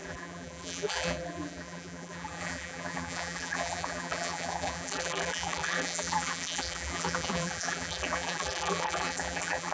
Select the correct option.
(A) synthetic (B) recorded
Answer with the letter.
A